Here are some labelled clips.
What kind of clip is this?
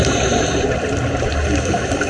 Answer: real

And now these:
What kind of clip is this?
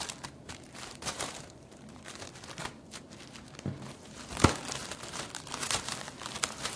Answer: fake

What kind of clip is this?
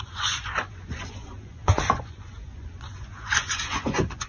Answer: fake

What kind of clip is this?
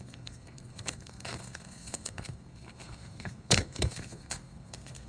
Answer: fake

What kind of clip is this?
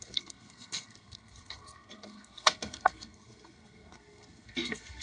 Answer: fake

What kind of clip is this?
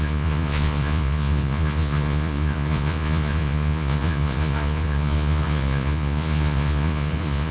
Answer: fake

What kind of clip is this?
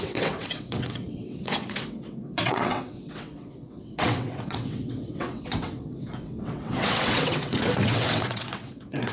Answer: fake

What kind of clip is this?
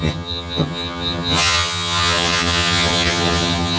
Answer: fake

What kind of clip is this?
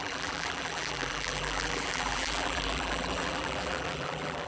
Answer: fake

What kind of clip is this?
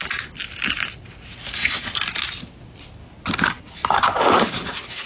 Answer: real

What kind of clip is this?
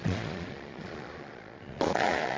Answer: fake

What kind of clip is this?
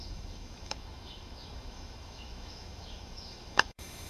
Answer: fake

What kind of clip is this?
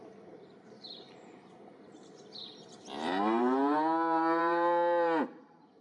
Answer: fake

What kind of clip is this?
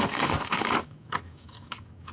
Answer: fake